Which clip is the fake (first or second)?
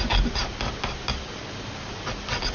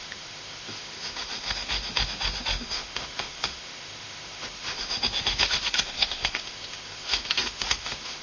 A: second